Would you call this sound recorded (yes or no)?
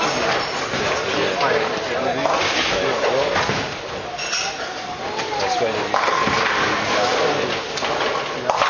yes